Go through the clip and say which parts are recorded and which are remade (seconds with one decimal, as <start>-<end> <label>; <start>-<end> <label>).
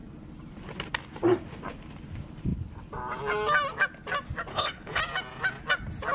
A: 0.0-4.5 recorded; 4.5-5.0 remade; 5.0-6.1 recorded